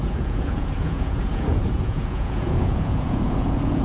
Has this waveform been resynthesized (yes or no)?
yes